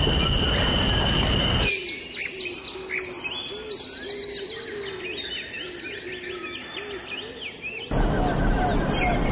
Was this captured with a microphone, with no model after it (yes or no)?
yes